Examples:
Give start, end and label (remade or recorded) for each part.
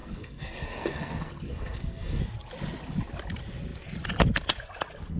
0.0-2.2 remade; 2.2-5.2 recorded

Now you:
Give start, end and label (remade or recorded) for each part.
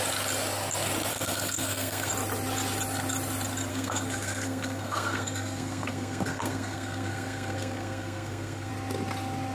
0.0-1.1 recorded; 1.1-2.1 remade; 2.1-3.7 recorded; 3.7-8.7 remade; 8.7-9.5 recorded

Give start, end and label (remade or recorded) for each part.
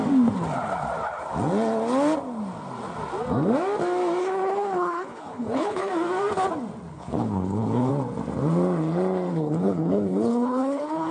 0.0-4.2 recorded; 4.2-5.9 remade; 5.9-6.9 recorded; 6.9-7.9 remade; 7.9-9.3 recorded; 9.3-11.1 remade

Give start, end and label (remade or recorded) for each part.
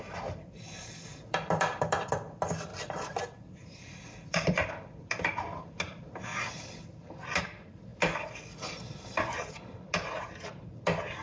0.0-2.7 recorded; 2.7-4.7 remade; 4.7-6.3 recorded; 6.3-7.4 remade; 7.4-11.2 recorded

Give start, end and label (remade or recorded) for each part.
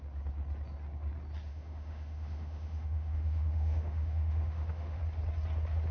0.0-1.5 recorded; 1.5-5.0 remade; 5.0-5.9 recorded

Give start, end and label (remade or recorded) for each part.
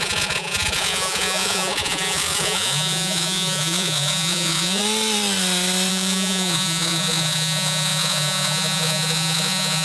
0.0-4.8 remade; 4.8-5.9 recorded; 5.9-9.8 remade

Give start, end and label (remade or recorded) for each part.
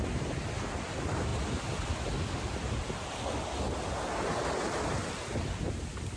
0.0-6.2 recorded